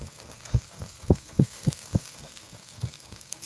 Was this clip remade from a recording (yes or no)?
yes